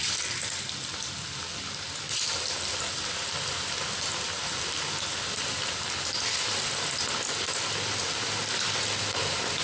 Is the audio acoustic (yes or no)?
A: yes